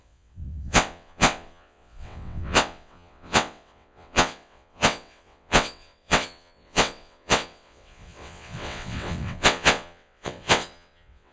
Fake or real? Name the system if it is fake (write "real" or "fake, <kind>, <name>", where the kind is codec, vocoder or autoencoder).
fake, vocoder, WaveNeXt